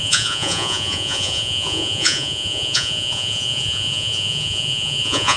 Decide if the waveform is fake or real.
fake